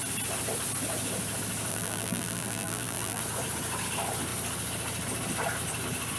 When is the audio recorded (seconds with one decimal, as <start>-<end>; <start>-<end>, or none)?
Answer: 0.0-1.7; 3.2-6.2